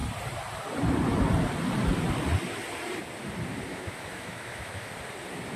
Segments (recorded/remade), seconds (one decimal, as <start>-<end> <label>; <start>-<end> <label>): 0.0-3.7 recorded; 3.7-4.9 remade; 4.9-5.6 recorded